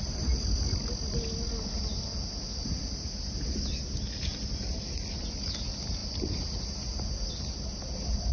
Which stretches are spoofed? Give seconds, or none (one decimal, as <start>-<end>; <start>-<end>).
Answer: none